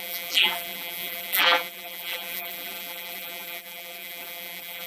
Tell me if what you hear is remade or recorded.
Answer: remade